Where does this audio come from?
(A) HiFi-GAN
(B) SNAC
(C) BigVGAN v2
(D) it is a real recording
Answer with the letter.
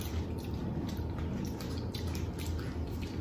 D